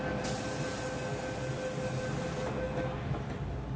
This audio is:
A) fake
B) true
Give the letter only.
B